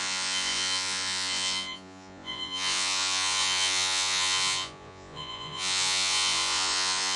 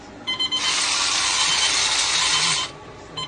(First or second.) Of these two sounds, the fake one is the first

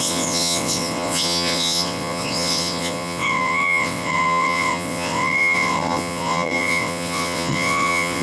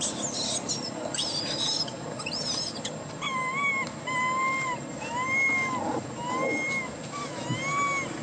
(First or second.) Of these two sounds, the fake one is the first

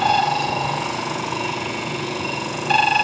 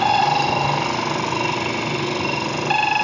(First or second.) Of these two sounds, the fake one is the first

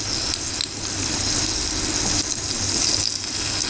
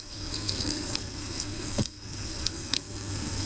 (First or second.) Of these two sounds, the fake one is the second